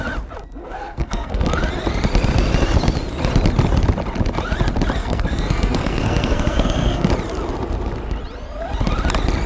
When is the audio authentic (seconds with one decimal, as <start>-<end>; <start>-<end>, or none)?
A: 0.0-0.6; 1.6-5.0; 7.1-9.5

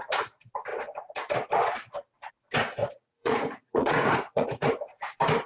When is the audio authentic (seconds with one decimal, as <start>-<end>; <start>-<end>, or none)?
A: 0.0-2.8; 4.7-5.5

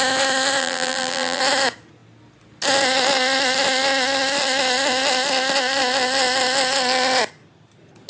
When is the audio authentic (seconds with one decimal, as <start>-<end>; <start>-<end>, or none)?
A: 0.0-0.6; 1.4-8.1